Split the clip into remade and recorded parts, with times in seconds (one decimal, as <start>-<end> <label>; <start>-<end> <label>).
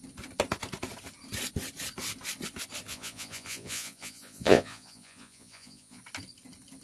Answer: 0.0-2.9 recorded; 2.9-6.0 remade; 6.0-6.8 recorded